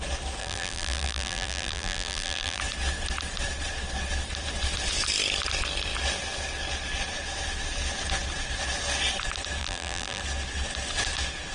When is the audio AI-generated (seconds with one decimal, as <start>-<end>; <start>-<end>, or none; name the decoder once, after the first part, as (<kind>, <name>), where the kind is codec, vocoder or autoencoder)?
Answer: 0.4-2.6 (vocoder, BigVGAN v2); 9.6-10.2